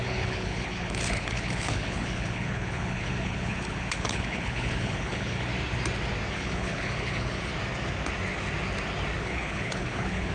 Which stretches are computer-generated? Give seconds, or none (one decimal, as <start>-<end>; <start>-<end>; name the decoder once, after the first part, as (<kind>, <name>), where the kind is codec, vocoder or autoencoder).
0.0-5.5 (codec, HILCodec); 6.3-7.5; 9.2-10.3